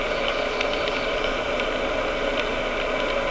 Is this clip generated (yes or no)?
no